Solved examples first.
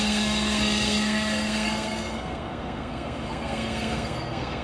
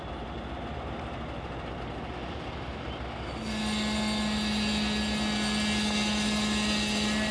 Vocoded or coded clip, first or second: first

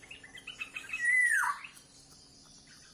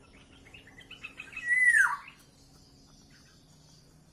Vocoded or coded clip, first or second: first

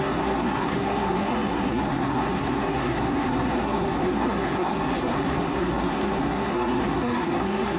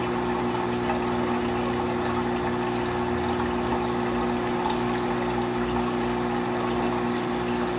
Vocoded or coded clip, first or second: first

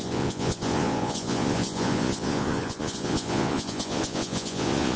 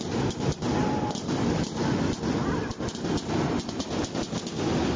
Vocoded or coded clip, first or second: first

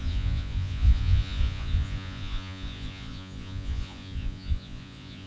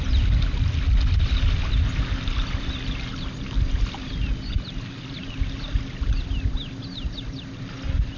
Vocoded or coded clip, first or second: first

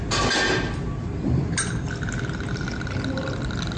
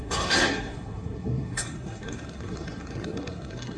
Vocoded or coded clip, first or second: second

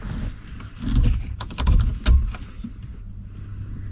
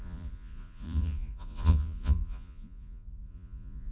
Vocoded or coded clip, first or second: second